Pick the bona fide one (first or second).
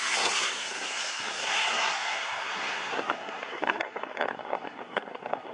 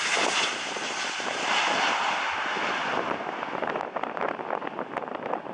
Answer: second